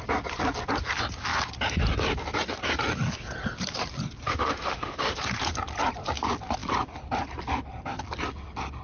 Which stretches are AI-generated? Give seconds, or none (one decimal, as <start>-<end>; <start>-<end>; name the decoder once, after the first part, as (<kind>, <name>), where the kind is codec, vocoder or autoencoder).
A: 4.3-5.2 (autoencoder, DAC-VAE)